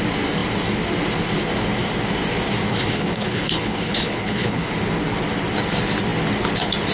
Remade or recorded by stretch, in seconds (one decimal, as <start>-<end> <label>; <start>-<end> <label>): 0.0-2.7 recorded; 2.7-4.7 remade; 4.7-6.9 recorded